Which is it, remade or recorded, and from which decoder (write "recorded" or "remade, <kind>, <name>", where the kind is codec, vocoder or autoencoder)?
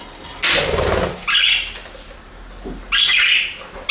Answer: recorded